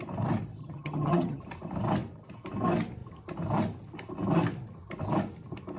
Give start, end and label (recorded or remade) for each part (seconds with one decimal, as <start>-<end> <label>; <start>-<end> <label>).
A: 0.0-0.6 recorded; 0.6-1.4 remade; 1.4-5.8 recorded